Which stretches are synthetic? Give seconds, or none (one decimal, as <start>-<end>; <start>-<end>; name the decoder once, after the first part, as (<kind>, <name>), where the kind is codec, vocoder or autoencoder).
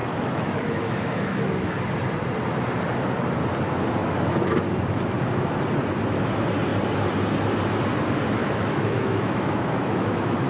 0.0-1.7 (autoencoder, DAC-VAE); 4.0-4.8; 8.4-10.5